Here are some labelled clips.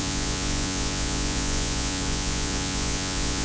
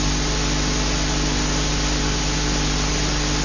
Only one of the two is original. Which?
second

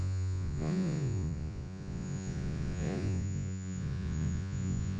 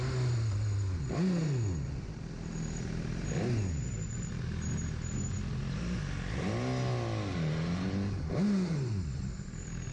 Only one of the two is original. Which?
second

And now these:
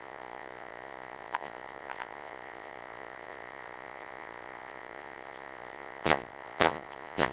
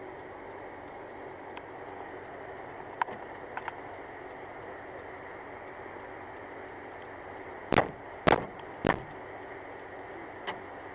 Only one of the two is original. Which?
second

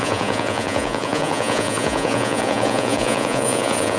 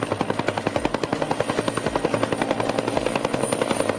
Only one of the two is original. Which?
second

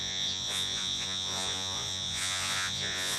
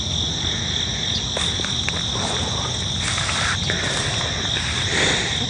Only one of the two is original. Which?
second